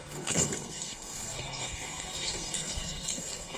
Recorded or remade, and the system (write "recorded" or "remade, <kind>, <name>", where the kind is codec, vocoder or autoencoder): remade, codec, SNAC